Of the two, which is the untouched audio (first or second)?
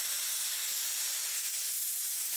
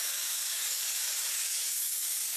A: first